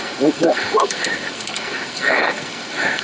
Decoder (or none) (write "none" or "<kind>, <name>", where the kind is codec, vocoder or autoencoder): codec, SNAC